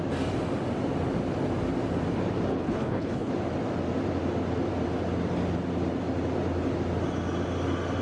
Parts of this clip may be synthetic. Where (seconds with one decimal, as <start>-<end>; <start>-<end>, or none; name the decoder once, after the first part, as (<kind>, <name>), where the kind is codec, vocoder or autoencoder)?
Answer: 2.5-3.3 (codec, HILCodec)